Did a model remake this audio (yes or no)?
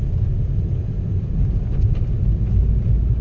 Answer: no